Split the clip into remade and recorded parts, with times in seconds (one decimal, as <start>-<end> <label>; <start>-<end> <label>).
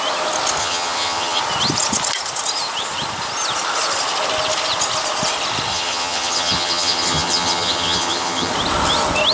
0.0-0.6 recorded; 0.6-1.4 remade; 1.4-5.7 recorded; 5.7-8.5 remade; 8.5-9.3 recorded